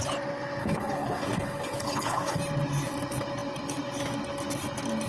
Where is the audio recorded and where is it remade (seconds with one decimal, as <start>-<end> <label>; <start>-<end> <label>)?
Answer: 0.0-0.6 recorded; 0.6-2.4 remade; 2.4-5.1 recorded

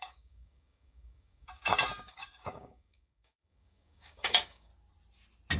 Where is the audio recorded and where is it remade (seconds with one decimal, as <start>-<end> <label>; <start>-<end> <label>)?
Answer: 0.0-4.7 remade; 4.7-5.6 recorded

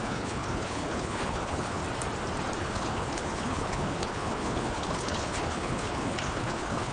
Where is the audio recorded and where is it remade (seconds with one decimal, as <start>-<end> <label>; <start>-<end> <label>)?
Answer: 0.0-1.8 remade; 1.8-2.6 recorded; 2.6-6.9 remade

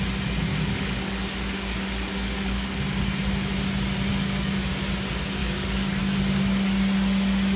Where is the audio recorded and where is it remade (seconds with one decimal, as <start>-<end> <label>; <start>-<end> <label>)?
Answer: 0.0-0.5 recorded; 0.5-2.8 remade; 2.8-4.1 recorded; 4.1-4.7 remade; 4.7-5.4 recorded; 5.4-6.0 remade; 6.0-7.6 recorded

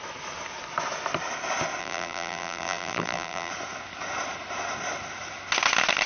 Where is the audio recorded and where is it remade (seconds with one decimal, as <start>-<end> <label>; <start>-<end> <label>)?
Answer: 0.0-1.8 recorded; 1.8-3.5 remade; 3.5-6.1 recorded

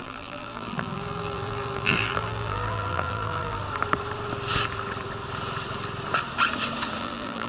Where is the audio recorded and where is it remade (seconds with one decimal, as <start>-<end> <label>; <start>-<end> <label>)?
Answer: 0.0-3.6 remade; 3.6-7.0 recorded; 7.0-7.5 remade